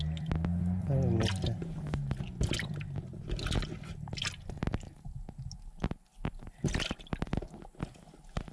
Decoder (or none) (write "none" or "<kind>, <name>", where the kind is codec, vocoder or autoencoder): none